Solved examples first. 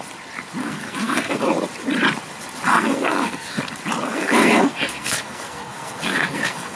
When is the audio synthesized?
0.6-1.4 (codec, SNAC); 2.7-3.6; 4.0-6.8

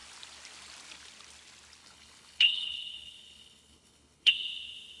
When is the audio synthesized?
1.8-4.3 (codec, HILCodec)

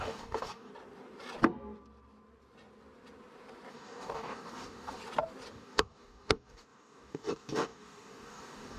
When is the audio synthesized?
0.0-0.7 (codec, DAC); 3.7-5.0; 5.5-8.8

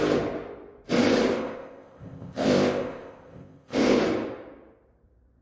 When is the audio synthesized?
1.3-4.0 (codec, ZipCodec)

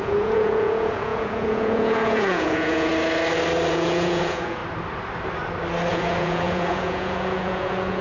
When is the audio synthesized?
0.0-2.9 (vocoder, Vocos); 3.7-4.6; 5.9-8.0

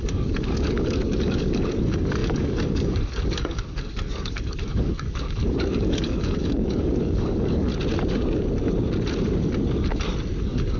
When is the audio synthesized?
0.0-7.7 (codec, DAC); 10.4-10.8

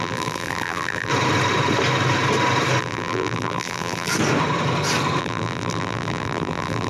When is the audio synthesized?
0.0-1.1 (vocoder, BigVGAN v2); 2.8-4.1; 5.2-6.9

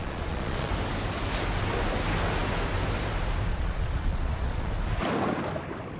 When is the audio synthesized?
0.0-0.7 (vocoder, Vocos); 3.5-4.7